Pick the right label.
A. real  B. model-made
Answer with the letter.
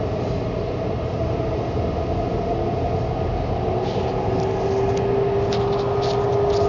A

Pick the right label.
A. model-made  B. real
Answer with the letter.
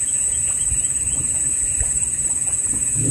B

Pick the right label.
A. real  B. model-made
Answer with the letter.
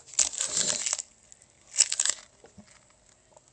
A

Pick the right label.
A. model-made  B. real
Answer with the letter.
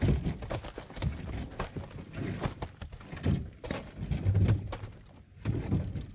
B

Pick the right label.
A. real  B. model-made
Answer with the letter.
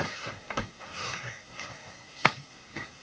B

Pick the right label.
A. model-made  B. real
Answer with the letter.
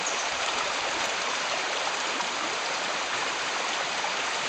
A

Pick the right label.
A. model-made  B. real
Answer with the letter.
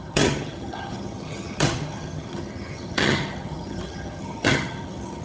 A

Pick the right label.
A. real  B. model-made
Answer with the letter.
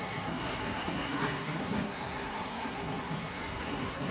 B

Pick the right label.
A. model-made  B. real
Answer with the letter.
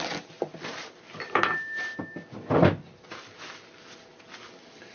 B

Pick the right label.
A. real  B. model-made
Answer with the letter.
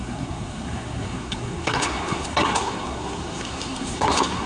B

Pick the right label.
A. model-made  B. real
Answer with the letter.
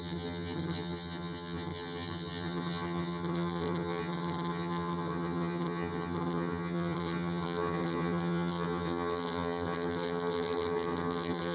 A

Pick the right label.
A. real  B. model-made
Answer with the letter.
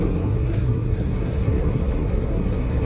B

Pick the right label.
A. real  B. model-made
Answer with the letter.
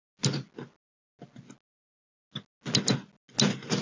A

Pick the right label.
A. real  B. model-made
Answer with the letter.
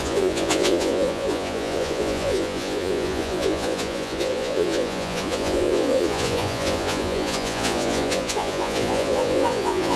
B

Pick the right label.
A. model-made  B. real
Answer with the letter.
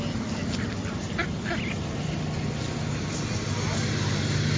B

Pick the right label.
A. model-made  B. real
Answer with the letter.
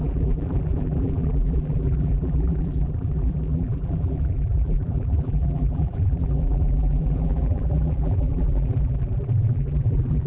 A